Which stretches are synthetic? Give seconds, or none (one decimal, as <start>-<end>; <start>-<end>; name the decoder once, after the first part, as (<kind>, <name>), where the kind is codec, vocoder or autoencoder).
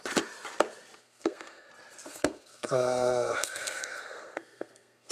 1.0-1.7 (codec, SNAC); 2.1-5.1